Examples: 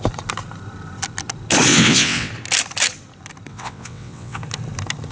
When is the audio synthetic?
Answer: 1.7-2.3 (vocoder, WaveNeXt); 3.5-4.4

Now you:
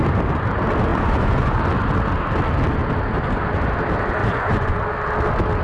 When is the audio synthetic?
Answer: 0.9-1.6 (vocoder, Vocos); 4.2-4.8

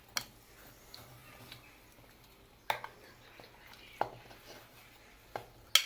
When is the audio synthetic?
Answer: none

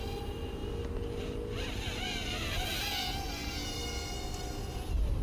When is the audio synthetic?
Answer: none